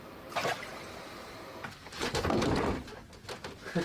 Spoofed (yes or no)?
no